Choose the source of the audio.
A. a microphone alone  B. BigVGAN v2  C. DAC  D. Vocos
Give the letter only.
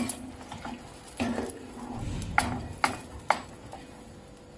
A